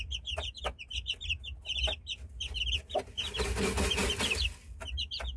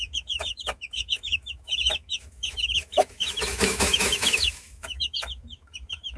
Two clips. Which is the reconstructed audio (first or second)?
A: second